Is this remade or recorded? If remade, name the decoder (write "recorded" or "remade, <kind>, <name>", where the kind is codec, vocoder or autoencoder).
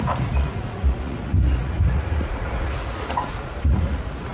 remade, vocoder, Vocos